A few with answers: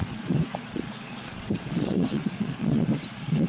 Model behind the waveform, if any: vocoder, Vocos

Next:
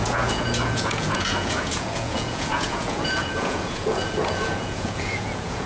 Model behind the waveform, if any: vocoder, Vocos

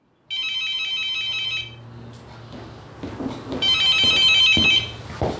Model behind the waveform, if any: none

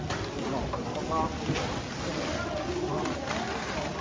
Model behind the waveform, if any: none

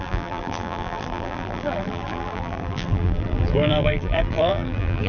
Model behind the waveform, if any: vocoder, BigVGAN v2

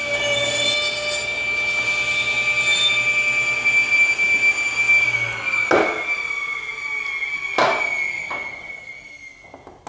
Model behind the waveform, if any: none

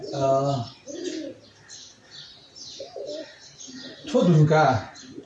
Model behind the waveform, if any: none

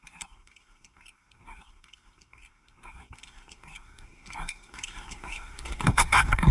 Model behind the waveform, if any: codec, SNAC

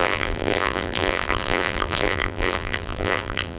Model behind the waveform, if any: vocoder, BigVGAN v2